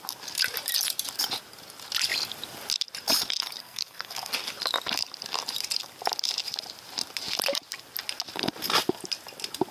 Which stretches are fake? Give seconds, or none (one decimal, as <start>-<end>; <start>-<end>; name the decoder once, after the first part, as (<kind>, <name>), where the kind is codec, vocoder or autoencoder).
3.6-4.3 (codec, SNAC)